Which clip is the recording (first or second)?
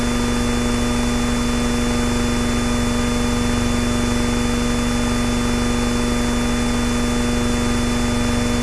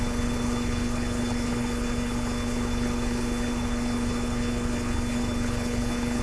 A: first